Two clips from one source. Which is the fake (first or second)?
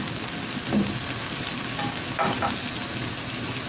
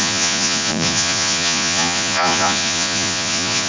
second